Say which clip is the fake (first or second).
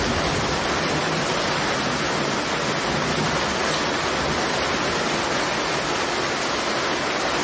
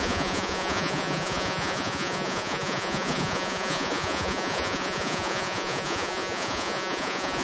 second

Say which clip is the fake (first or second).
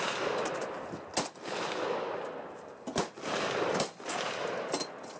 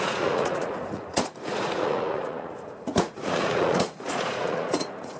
second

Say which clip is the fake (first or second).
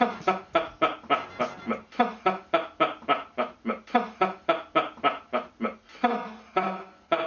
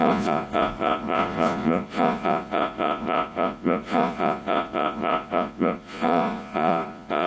second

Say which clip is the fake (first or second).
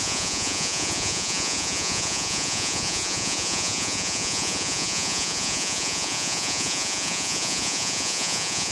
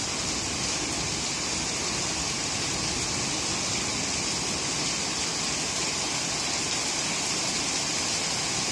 first